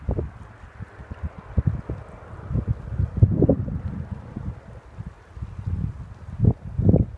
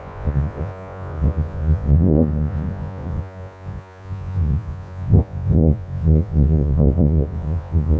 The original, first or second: first